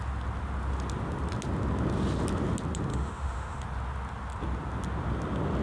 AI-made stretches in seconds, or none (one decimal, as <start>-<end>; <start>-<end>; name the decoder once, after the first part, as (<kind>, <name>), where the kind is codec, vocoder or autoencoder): 2.9-3.6 (autoencoder, DAC-VAE)

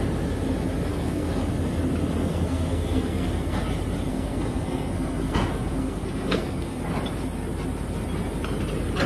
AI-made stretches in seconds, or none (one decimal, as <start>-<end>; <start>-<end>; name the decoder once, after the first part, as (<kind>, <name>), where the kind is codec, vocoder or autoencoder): 0.9-1.5 (codec, SNAC); 2.2-3.6; 4.1-6.8

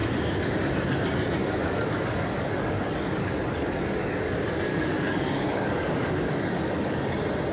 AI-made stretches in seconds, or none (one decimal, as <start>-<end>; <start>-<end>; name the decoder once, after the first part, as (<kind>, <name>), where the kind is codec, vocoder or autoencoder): 0.0-0.6 (codec, DAC); 1.4-4.3; 4.7-7.0